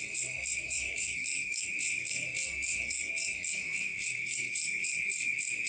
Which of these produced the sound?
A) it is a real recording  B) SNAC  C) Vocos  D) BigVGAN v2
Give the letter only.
B